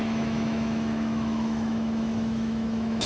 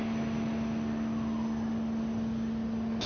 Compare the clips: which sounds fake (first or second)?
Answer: first